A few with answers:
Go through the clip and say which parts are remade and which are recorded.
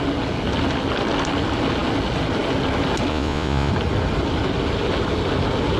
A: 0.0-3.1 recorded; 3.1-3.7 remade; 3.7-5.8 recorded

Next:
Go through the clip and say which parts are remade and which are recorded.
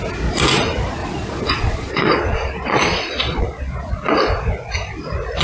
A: 0.0-1.0 recorded; 1.0-4.2 remade; 4.2-5.4 recorded